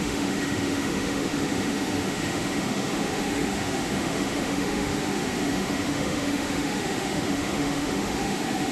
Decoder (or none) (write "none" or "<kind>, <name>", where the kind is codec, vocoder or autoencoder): autoencoder, DAC-VAE